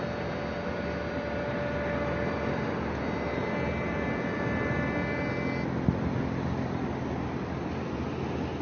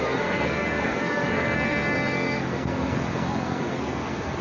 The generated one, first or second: second